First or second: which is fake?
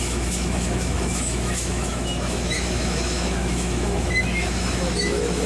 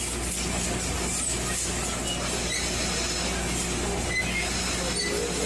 first